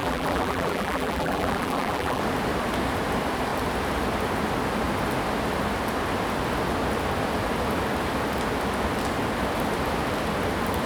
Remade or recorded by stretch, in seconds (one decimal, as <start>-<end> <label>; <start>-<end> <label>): 0.0-2.2 remade; 2.2-10.9 recorded